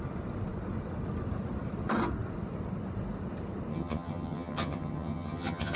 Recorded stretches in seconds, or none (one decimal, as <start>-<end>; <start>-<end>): 0.0-3.7